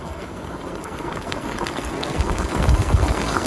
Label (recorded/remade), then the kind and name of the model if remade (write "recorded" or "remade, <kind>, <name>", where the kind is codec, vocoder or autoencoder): remade, codec, SNAC